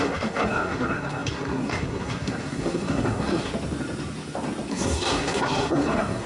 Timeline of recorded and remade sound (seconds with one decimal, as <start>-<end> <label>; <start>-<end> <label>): 0.0-3.5 remade; 3.5-4.7 recorded; 4.7-6.3 remade